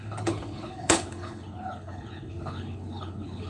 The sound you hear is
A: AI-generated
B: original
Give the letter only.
A